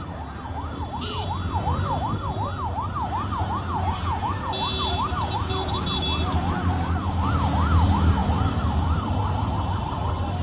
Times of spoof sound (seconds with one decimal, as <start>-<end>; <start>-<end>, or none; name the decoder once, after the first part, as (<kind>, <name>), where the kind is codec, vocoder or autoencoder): none

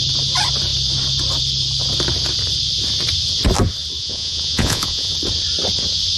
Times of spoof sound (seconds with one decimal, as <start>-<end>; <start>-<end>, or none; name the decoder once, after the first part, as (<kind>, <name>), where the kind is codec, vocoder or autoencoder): 4.0-5.1 (vocoder, Vocos)

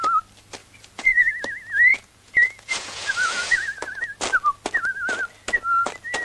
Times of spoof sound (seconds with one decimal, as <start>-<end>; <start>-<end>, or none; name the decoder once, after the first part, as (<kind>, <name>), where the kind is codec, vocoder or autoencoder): 0.6-1.3 (vocoder, Vocos); 1.9-4.0

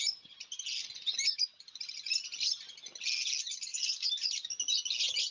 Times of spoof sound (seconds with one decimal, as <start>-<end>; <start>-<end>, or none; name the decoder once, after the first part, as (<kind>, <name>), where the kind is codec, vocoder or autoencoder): none

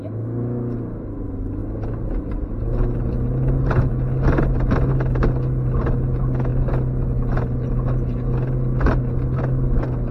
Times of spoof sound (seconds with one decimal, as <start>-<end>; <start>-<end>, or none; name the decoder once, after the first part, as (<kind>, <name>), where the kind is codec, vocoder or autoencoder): none

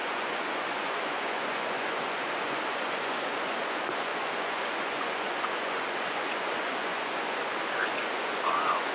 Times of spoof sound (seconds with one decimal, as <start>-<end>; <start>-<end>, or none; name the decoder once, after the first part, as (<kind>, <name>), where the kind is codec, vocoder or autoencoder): 0.0-8.9 (vocoder, Vocos)

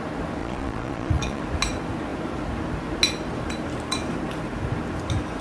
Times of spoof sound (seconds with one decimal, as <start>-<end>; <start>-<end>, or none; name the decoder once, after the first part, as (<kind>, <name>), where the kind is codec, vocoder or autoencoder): 0.4-1.4 (vocoder, Vocos)

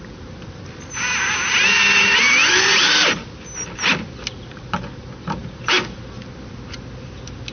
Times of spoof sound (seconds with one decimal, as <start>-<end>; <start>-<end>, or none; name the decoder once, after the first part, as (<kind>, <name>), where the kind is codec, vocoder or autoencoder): none